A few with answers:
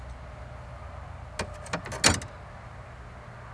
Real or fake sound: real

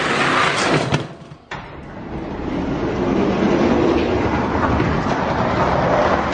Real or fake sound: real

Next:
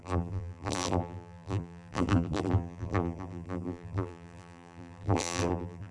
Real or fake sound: fake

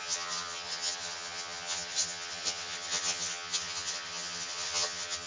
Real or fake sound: fake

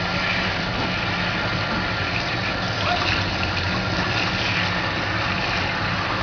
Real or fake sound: real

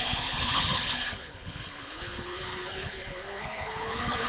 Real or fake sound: fake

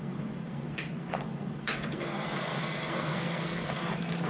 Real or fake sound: fake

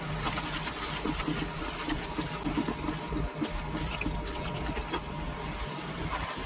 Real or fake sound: real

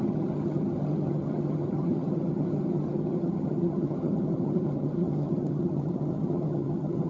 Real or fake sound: fake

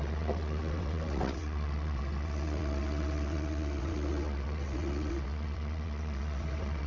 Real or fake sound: fake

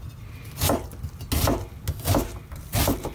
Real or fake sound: real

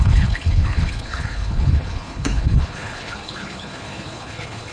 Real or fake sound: fake